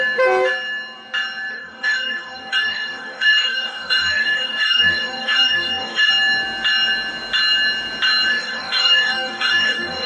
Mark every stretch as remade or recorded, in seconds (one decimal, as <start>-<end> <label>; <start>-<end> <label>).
0.0-1.5 recorded; 1.5-6.1 remade; 6.1-8.3 recorded; 8.3-10.1 remade